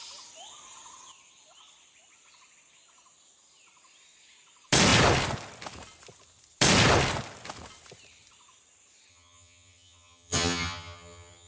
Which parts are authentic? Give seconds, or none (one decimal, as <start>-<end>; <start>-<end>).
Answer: 0.0-9.1